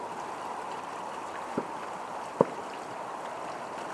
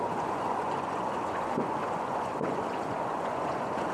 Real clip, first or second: first